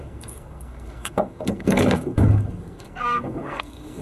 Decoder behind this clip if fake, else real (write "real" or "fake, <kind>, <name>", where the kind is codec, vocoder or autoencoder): fake, codec, SNAC